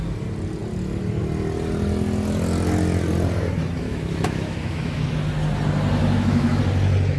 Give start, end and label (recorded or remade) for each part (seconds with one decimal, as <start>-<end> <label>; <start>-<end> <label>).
0.0-3.8 recorded; 3.8-5.0 remade; 5.0-6.0 recorded; 6.0-6.6 remade; 6.6-7.2 recorded